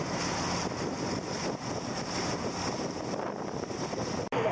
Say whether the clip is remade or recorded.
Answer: recorded